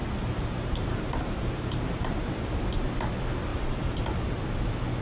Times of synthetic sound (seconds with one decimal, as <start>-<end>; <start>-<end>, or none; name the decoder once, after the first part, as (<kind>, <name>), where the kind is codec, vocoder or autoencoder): 0.0-2.2 (vocoder, BigVGAN v2); 3.5-4.0